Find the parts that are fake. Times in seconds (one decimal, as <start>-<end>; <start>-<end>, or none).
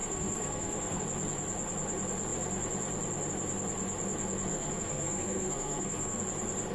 0.0-1.0; 4.5-6.2